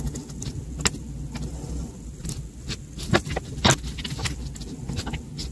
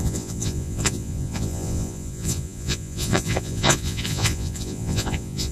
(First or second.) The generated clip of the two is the second